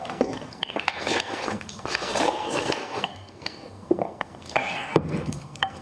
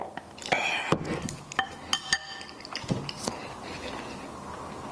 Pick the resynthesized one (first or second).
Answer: first